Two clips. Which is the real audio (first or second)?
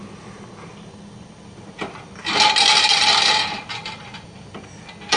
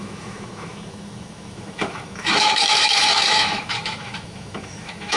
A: first